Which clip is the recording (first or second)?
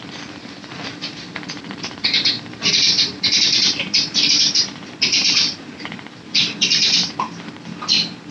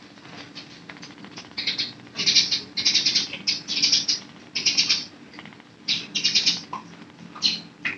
second